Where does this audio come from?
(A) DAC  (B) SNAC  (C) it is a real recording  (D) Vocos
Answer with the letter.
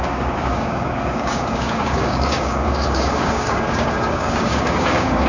A